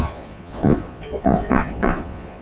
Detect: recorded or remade remade